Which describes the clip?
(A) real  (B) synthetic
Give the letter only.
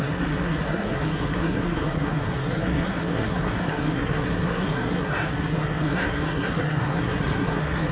B